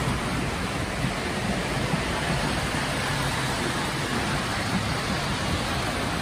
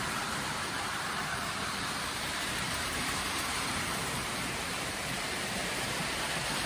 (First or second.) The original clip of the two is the first